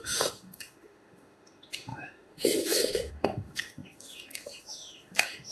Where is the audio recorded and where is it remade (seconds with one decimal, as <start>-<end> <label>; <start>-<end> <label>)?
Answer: 0.0-5.5 remade